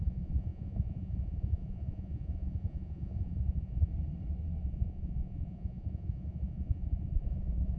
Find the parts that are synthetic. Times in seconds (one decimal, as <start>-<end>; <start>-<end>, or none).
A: 0.0-3.9; 4.6-7.8